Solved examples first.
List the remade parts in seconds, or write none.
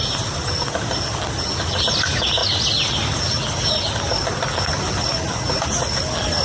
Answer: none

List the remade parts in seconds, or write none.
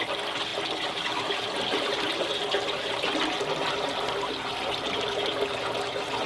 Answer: 0.5-4.3 (vocoder, BigVGAN v2)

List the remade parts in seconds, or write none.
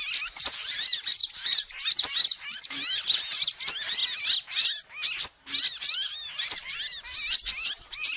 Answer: none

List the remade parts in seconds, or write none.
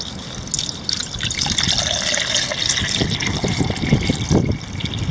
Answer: none